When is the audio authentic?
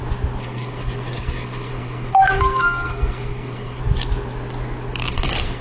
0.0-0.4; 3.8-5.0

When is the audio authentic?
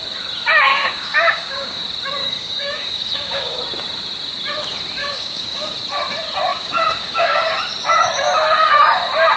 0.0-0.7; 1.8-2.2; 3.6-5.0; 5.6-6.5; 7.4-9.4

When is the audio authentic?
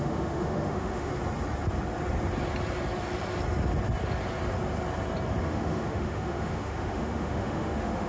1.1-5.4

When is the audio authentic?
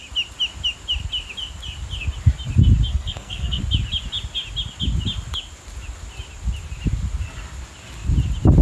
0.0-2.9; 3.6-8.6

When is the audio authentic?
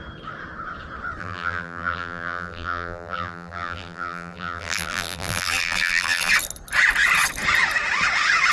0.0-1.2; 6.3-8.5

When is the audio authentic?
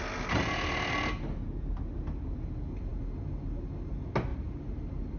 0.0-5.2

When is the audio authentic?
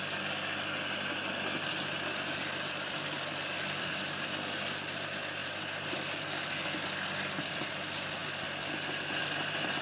0.0-9.8